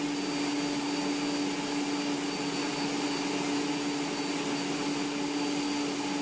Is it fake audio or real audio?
real